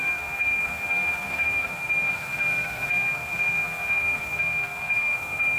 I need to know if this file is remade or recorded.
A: remade